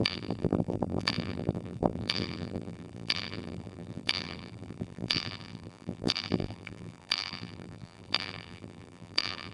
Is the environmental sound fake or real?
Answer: fake